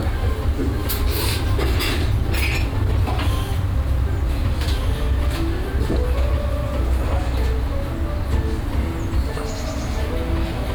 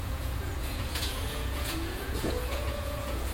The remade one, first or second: second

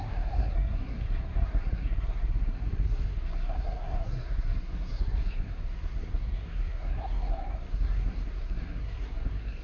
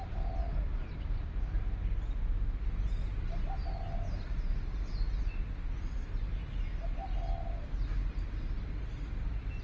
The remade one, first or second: first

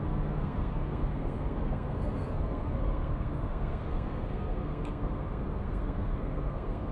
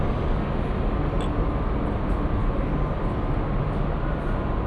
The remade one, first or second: first